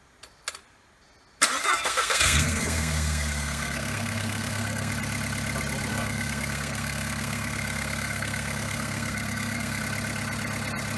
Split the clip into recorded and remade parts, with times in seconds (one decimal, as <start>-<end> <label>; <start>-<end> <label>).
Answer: 0.0-1.6 recorded; 1.6-4.9 remade; 4.9-5.9 recorded; 5.9-9.8 remade; 9.8-11.0 recorded